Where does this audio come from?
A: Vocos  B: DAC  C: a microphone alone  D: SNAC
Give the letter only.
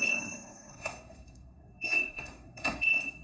D